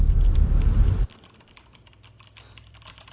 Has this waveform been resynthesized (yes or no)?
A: yes